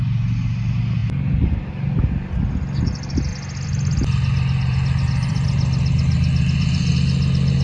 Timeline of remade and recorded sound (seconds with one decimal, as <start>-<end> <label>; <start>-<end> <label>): 0.0-1.0 recorded; 1.0-1.6 remade; 1.6-3.3 recorded; 3.3-6.9 remade; 6.9-7.6 recorded